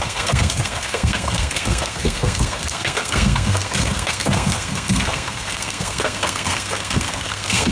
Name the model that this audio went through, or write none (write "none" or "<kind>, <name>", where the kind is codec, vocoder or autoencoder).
codec, SNAC